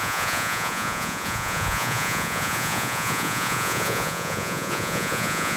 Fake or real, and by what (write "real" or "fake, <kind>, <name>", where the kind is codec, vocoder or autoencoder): fake, vocoder, Vocos